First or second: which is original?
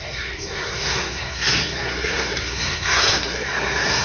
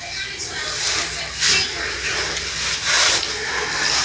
second